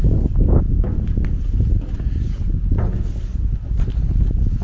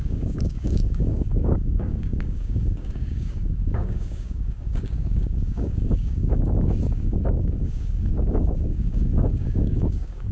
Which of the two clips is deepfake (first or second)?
second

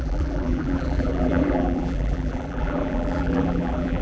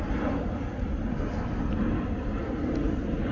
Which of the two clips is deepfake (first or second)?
first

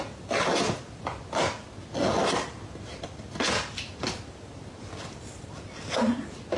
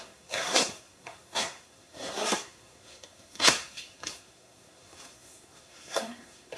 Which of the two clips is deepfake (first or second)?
second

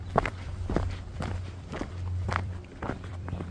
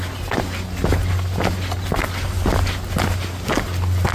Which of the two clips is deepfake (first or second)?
first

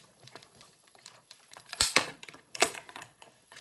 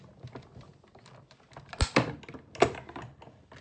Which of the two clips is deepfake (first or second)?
first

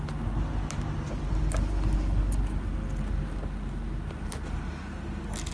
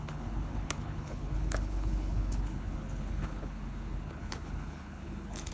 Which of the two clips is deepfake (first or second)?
second